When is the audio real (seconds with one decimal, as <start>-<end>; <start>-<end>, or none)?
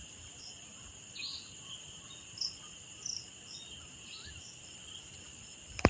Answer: none